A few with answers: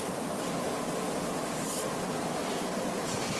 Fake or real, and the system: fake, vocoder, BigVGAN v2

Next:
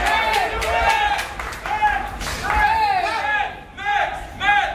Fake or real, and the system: real